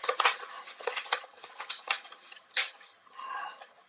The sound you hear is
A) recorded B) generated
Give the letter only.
B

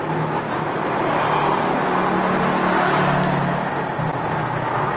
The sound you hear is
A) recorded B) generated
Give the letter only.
A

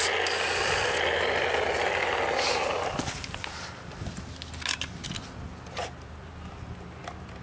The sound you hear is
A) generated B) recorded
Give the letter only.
B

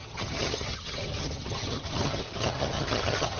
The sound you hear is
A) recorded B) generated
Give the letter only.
B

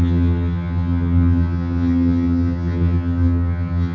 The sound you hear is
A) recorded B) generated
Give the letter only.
B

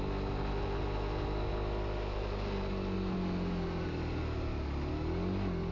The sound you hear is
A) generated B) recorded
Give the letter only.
B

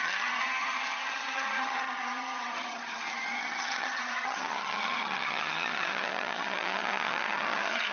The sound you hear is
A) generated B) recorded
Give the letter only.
A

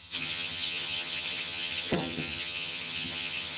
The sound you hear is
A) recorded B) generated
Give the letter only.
B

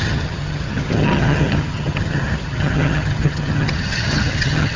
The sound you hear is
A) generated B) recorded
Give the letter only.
A